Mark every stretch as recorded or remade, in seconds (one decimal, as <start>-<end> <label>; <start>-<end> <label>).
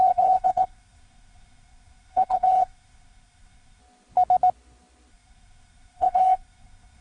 0.0-3.8 remade; 3.8-5.1 recorded; 5.1-7.0 remade